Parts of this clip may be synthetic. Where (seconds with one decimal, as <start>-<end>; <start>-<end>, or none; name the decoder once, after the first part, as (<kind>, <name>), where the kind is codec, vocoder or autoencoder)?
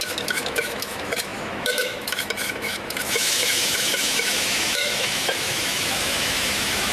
0.0-6.9 (autoencoder, DAC-VAE)